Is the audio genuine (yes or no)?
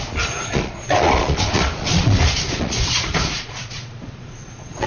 no